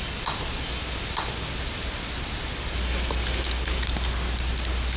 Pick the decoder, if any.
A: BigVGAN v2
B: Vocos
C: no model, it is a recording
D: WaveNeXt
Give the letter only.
C